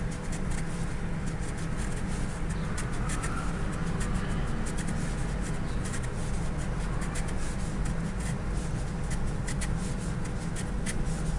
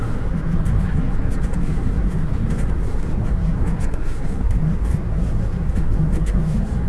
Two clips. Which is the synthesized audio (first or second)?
second